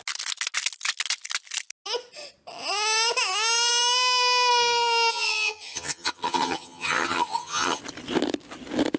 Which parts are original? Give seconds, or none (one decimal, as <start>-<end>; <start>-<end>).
0.0-5.1; 7.8-9.0